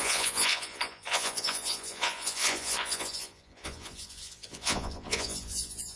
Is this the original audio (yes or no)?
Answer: no